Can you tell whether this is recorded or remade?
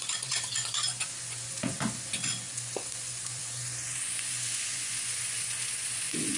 remade